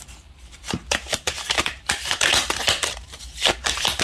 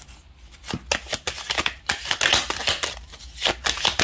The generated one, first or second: first